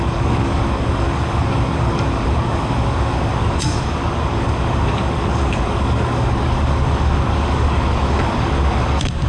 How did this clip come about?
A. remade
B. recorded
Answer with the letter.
A